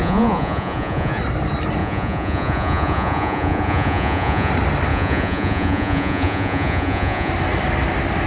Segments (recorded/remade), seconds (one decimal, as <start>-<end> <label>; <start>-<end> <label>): 0.0-1.2 remade; 1.2-1.8 recorded; 1.8-4.5 remade; 4.5-4.9 recorded; 4.9-7.3 remade; 7.3-8.3 recorded